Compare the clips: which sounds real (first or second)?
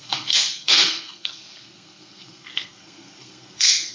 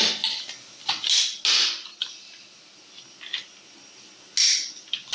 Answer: second